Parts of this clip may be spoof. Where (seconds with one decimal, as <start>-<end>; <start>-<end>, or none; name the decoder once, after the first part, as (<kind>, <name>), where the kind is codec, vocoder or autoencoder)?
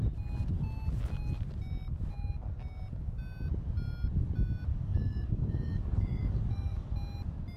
4.7-6.9 (codec, DAC)